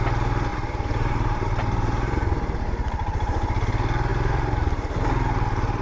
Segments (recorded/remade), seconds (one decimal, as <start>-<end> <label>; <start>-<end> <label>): 0.0-0.5 recorded; 0.5-2.7 remade; 2.7-4.1 recorded; 4.1-5.0 remade; 5.0-5.8 recorded